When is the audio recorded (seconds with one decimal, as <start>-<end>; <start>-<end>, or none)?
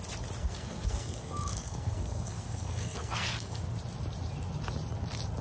0.0-0.4; 3.6-5.4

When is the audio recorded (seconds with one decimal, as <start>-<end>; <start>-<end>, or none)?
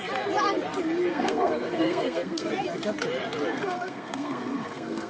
0.0-1.1; 2.5-3.5